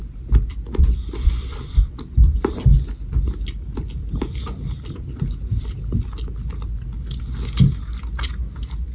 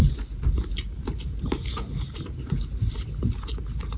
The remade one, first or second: second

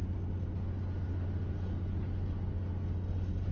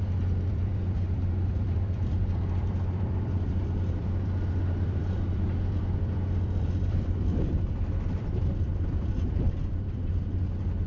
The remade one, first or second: second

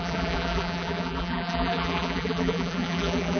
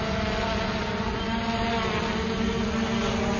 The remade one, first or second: first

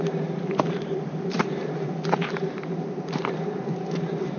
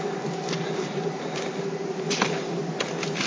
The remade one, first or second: first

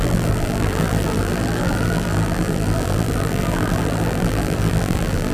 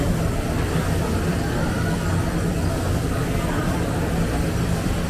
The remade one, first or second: first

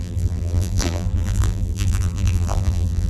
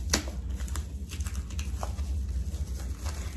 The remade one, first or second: first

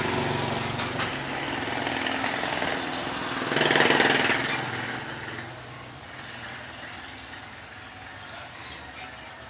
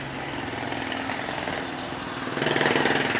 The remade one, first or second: second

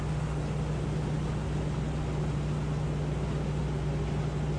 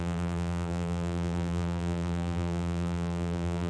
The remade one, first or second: second